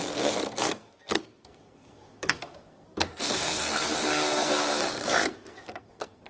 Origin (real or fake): fake